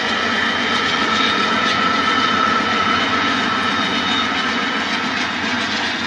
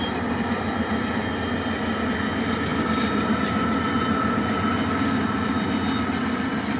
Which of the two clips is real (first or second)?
second